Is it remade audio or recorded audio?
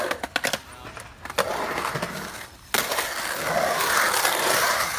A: recorded